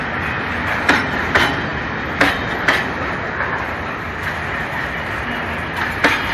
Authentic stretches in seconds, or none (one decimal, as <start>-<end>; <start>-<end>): 0.0-6.3